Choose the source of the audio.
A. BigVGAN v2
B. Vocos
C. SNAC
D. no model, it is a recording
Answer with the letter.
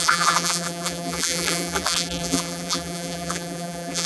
A